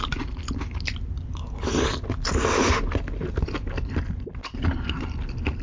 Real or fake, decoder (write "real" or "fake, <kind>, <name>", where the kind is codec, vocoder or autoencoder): real